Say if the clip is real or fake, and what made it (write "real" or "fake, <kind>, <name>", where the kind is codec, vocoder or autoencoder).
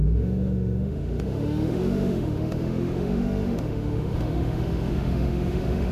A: fake, autoencoder, DAC-VAE